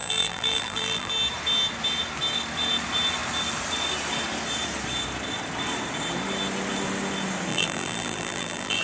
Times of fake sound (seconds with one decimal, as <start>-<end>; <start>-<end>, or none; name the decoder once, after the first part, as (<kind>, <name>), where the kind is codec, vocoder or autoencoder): 0.0-1.1 (vocoder, BigVGAN v2); 7.5-8.8